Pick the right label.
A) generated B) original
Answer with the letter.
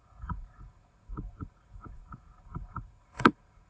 A